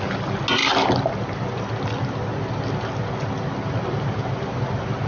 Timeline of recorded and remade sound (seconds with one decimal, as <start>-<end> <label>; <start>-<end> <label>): 0.0-5.1 recorded